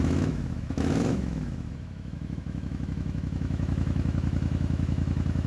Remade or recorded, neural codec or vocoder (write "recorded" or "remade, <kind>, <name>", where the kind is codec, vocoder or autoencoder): remade, autoencoder, DAC-VAE